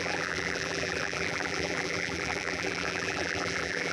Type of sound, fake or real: fake